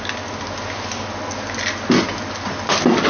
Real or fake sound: real